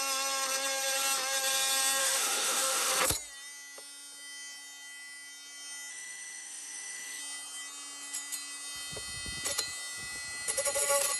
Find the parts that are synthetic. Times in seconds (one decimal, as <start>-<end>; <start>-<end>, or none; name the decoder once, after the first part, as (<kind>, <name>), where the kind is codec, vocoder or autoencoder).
2.0-2.9 (autoencoder, DAC-VAE); 5.9-7.2